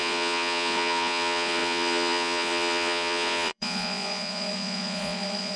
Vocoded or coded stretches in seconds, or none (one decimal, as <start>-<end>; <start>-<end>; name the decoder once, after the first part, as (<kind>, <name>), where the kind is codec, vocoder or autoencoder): 0.0-5.6 (vocoder, Vocos)